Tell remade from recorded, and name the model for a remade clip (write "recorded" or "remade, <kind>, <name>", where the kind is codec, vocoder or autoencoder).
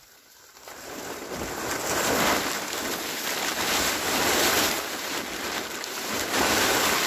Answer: recorded